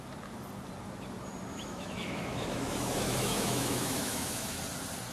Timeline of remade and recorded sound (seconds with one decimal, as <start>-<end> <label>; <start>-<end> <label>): 0.0-1.5 recorded; 1.5-4.6 remade; 4.6-5.1 recorded